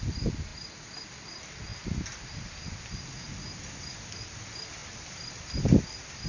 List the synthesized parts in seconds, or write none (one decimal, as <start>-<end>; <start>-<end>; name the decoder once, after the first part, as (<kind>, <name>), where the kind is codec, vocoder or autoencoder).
none